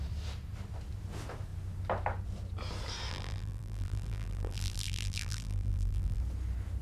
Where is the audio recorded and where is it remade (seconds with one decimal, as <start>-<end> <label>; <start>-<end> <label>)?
0.0-3.1 recorded; 3.1-6.2 remade; 6.2-6.8 recorded